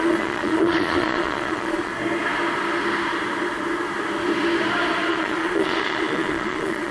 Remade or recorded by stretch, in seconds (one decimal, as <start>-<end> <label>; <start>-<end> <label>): 0.0-1.9 remade; 1.9-5.1 recorded; 5.1-6.9 remade